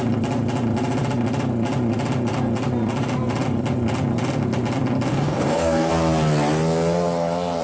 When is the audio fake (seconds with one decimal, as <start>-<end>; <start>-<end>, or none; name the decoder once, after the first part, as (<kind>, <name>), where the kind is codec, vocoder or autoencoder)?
5.1-5.9 (codec, DAC)